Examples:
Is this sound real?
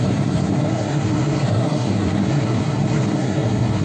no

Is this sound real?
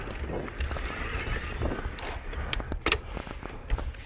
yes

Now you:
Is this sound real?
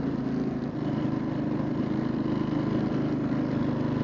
yes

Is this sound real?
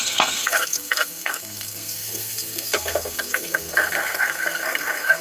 no